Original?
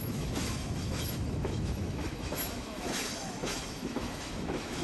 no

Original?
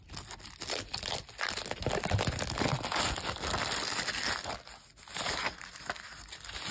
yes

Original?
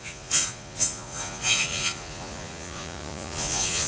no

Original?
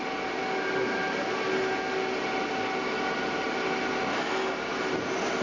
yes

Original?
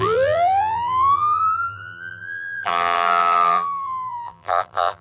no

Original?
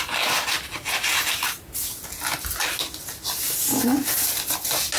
yes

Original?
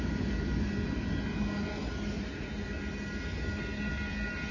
yes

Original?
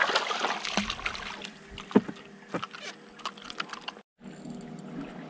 yes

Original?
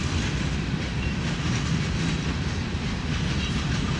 yes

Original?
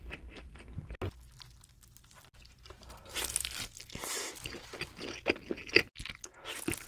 yes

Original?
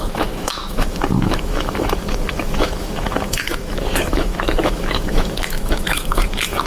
no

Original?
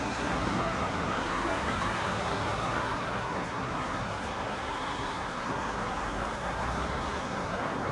no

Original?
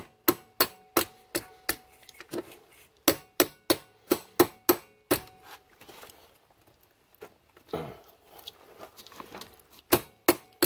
yes